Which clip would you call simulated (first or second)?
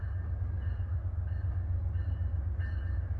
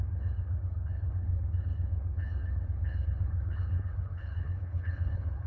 second